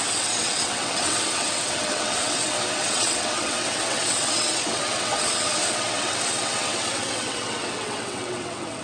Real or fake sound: fake